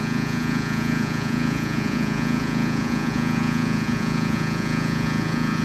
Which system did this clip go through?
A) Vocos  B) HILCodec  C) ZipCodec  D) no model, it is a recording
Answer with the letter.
A